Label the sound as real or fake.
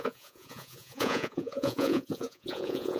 fake